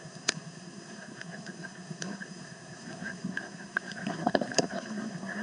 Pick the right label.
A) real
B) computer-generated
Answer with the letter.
B